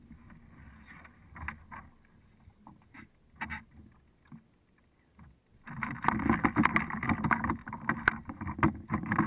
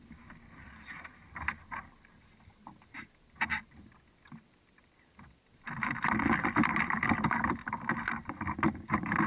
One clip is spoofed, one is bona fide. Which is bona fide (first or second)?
first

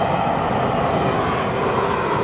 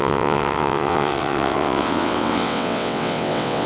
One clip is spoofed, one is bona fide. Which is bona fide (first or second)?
first